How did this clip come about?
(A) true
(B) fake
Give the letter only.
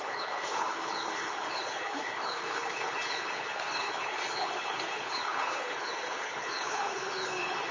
B